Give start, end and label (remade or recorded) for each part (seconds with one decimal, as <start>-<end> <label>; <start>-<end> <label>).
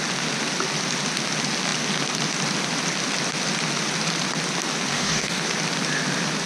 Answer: 0.0-4.9 recorded; 4.9-5.4 remade; 5.4-6.5 recorded